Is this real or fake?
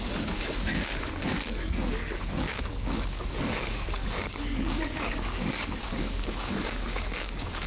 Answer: fake